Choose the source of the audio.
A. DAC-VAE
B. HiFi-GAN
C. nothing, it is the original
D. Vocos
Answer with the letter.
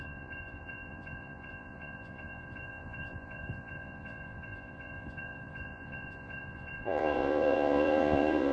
D